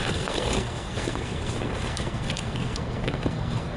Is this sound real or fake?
fake